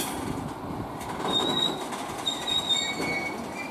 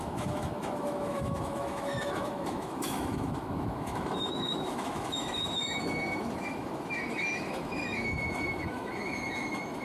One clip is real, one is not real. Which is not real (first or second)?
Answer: second